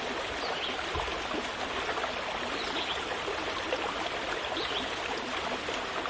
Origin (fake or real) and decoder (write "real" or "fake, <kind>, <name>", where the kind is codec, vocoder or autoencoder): real